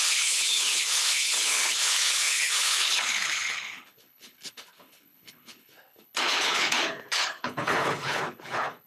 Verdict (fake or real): fake